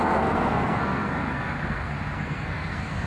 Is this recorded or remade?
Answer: remade